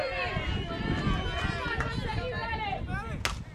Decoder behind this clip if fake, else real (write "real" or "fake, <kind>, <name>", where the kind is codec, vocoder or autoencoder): real